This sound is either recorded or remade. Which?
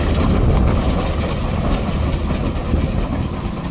recorded